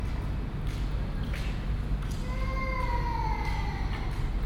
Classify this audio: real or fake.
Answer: real